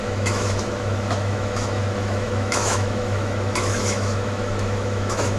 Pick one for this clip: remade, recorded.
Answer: remade